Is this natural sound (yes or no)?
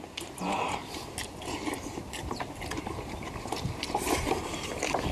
yes